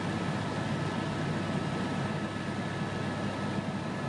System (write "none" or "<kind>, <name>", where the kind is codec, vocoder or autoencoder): none